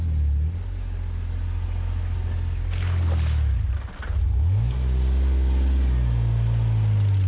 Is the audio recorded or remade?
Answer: recorded